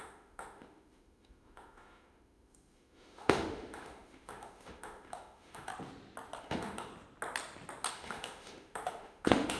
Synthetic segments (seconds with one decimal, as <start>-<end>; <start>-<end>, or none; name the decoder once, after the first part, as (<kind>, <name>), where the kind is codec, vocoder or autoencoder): 0.0-5.7 (autoencoder, DAC-VAE); 6.4-6.9; 7.9-9.6